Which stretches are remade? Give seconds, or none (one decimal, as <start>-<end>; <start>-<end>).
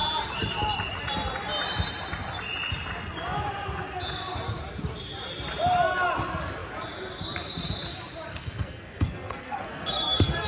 8.3-10.5